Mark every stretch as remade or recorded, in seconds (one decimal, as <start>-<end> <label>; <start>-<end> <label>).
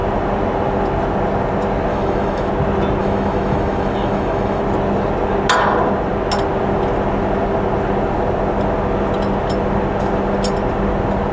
0.0-1.9 recorded; 1.9-2.5 remade; 2.5-3.0 recorded; 3.0-4.6 remade; 4.6-11.3 recorded